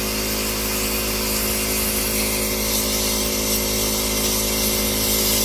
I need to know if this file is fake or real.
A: real